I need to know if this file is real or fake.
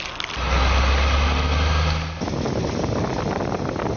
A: real